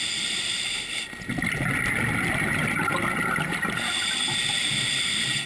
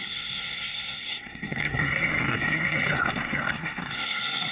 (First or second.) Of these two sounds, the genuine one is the first